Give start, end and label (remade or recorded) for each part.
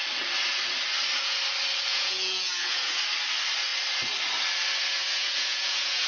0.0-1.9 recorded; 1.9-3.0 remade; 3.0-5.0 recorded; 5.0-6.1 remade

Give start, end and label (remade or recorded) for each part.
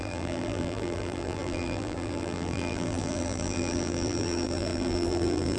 0.0-5.6 remade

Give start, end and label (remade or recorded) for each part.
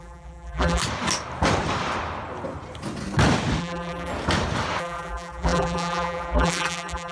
0.0-0.8 remade; 0.8-3.6 recorded; 3.6-4.1 remade; 4.1-4.8 recorded; 4.8-7.1 remade